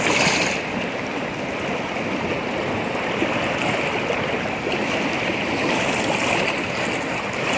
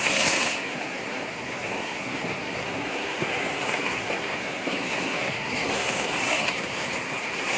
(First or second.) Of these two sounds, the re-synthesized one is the second